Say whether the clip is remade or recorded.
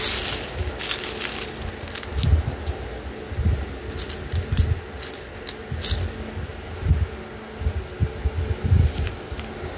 recorded